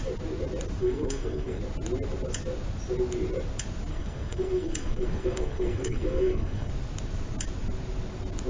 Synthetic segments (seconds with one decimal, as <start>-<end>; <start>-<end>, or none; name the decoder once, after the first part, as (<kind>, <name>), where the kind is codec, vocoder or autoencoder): 0.8-1.6 (codec, SNAC); 3.9-6.7